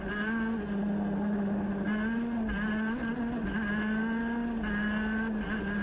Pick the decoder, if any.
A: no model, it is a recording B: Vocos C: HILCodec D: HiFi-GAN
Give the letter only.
A